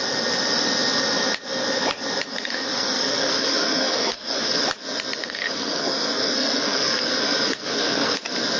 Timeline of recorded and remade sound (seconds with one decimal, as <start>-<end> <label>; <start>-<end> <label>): 0.0-2.3 recorded; 2.3-4.6 remade; 4.6-5.2 recorded; 5.2-8.2 remade; 8.2-8.6 recorded